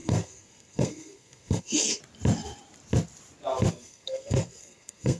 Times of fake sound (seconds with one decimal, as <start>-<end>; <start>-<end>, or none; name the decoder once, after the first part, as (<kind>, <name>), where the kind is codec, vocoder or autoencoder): 0.0-2.0 (codec, SNAC); 3.7-5.2